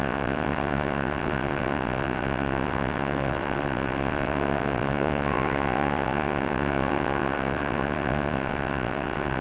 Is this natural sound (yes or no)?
no